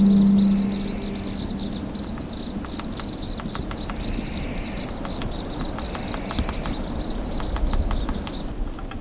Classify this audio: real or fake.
real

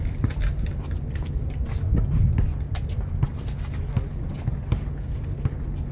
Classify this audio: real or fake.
real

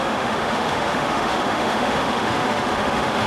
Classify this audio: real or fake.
fake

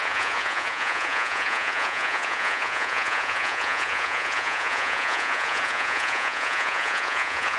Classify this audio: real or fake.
fake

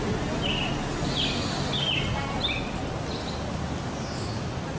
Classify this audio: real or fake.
real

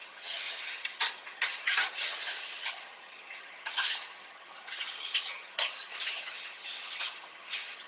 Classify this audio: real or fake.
fake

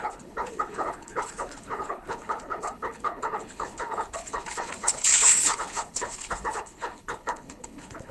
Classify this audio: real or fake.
fake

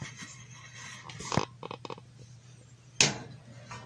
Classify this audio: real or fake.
real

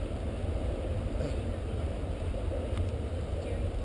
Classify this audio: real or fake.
real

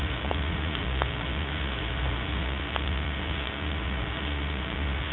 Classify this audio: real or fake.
fake